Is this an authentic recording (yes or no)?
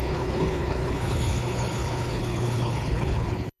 no